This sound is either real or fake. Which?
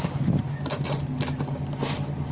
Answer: real